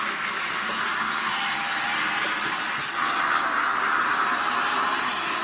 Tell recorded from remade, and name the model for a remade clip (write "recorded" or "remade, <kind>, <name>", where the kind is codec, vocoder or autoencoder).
recorded